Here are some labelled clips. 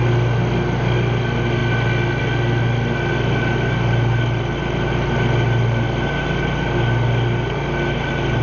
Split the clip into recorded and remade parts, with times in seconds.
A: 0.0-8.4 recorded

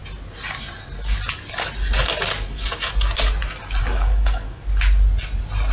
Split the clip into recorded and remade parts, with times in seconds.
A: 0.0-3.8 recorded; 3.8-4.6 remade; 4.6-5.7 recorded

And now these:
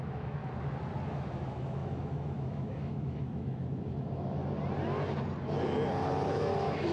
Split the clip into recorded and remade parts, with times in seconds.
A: 0.0-0.4 remade; 0.4-1.1 recorded; 1.1-4.4 remade; 4.4-6.3 recorded; 6.3-6.9 remade

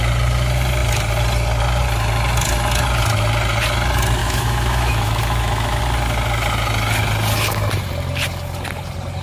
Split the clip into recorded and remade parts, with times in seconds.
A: 0.0-4.2 recorded; 4.2-5.8 remade; 5.8-9.2 recorded

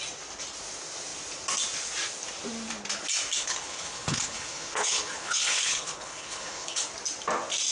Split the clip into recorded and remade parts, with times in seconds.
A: 0.0-3.4 recorded; 3.4-6.9 remade; 6.9-7.7 recorded

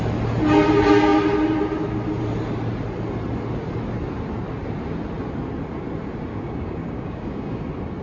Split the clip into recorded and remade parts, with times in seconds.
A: 0.0-6.3 recorded; 6.3-7.6 remade; 7.6-8.0 recorded